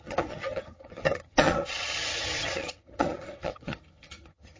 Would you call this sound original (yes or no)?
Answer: no